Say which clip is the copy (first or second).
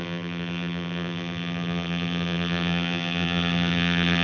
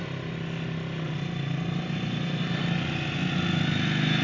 first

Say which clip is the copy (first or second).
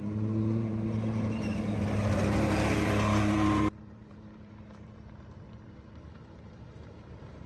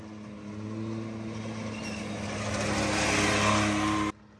first